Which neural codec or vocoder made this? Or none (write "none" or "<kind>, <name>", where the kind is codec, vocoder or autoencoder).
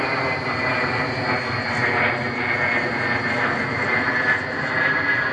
none